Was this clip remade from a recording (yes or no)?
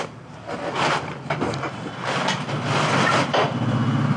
no